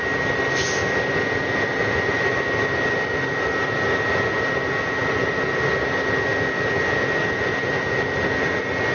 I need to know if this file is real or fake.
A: real